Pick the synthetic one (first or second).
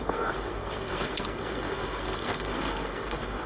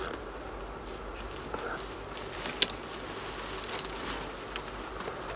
first